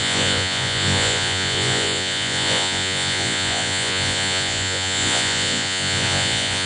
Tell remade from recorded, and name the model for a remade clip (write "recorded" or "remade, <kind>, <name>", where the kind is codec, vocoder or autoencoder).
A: remade, vocoder, Vocos